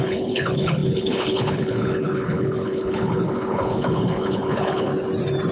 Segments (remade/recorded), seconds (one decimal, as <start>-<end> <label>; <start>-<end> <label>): 0.0-4.9 remade; 4.9-5.5 recorded